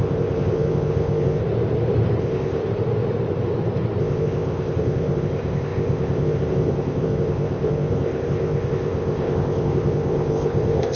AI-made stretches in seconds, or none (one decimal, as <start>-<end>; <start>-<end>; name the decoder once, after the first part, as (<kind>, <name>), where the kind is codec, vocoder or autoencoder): 0.0-1.4 (codec, ZipCodec); 2.2-2.6; 4.0-11.0